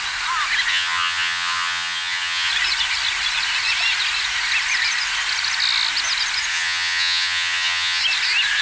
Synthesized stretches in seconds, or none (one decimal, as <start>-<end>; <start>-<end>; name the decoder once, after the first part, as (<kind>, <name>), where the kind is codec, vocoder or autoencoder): 0.7-2.5 (vocoder, HiFi-GAN); 6.5-8.0